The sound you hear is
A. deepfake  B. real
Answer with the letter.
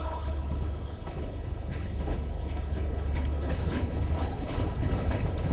A